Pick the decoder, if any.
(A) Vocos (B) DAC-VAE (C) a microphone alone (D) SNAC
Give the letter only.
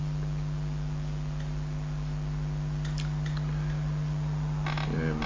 C